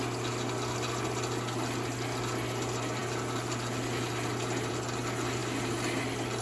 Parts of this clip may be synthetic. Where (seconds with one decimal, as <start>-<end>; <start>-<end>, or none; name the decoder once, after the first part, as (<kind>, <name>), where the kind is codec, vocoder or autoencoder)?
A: none